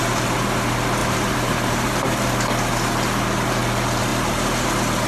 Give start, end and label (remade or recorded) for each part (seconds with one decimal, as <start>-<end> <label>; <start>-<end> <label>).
0.0-1.0 recorded; 1.0-2.3 remade; 2.3-5.1 recorded